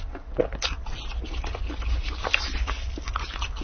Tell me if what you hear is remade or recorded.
recorded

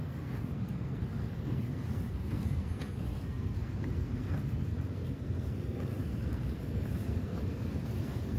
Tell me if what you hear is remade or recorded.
remade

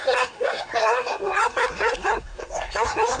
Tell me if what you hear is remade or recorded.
remade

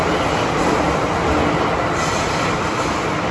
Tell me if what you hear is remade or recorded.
recorded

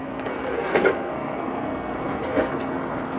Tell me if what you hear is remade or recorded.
remade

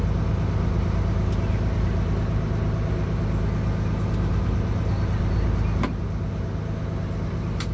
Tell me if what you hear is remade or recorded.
recorded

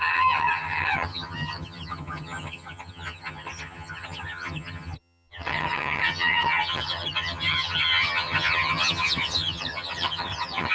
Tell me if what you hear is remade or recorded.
remade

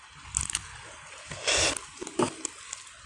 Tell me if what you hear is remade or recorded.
recorded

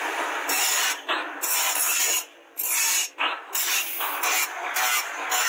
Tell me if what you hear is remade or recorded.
recorded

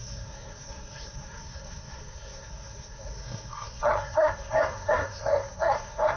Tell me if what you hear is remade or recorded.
remade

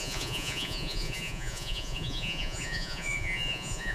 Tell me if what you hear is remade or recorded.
remade